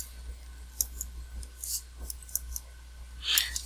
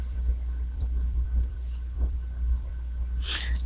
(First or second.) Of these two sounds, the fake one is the second